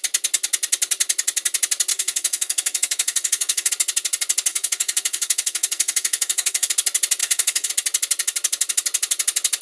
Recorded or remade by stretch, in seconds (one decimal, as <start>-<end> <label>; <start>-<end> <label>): 0.0-1.9 recorded; 1.9-3.7 remade; 3.7-4.5 recorded; 4.5-6.7 remade; 6.7-7.2 recorded; 7.2-7.7 remade; 7.7-9.6 recorded